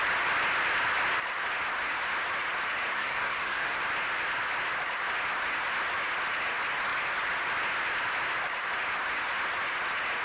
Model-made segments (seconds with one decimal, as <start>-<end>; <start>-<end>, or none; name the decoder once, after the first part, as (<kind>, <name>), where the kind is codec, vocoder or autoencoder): 2.9-3.8 (codec, SNAC)